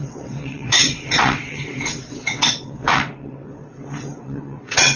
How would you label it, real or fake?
fake